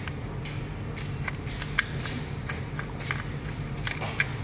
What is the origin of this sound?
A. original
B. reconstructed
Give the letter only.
A